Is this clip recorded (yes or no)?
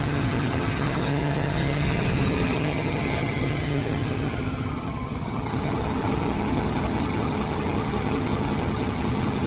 no